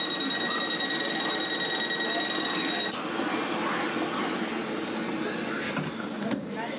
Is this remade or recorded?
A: recorded